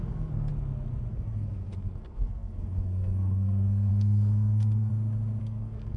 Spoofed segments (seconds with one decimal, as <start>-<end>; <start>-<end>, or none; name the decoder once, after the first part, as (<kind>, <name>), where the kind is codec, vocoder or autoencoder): 0.0-0.5 (codec, SNAC); 1.1-4.9; 5.4-6.0